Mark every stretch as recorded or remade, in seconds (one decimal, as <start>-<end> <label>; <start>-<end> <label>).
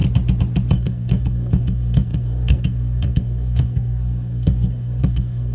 0.0-0.7 recorded; 0.7-5.5 remade